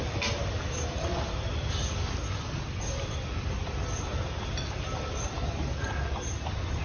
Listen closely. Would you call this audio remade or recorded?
recorded